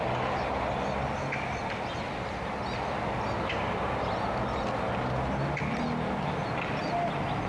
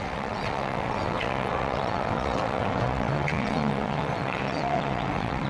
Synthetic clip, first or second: second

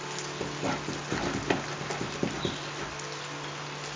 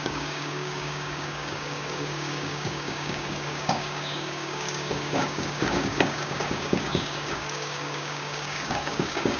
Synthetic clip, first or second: second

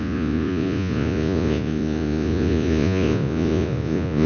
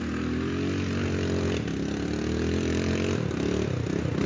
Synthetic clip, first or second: first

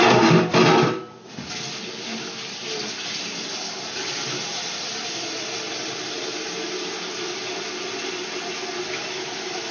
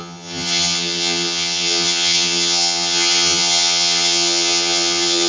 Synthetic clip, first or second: second